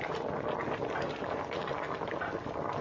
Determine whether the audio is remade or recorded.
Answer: recorded